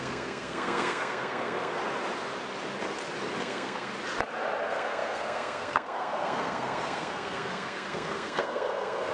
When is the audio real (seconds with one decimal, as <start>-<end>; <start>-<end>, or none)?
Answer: 1.8-3.4; 3.9-4.6